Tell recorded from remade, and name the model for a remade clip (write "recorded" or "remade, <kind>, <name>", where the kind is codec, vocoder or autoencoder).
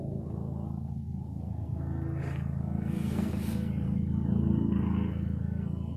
remade, codec, SNAC